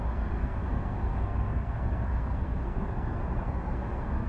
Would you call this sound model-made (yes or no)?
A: yes